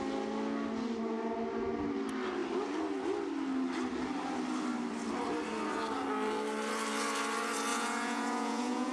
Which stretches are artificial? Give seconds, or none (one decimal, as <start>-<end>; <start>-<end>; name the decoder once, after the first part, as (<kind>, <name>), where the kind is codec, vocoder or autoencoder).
7.7-8.9 (vocoder, Vocos)